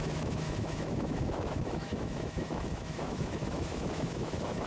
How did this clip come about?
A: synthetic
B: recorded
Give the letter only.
A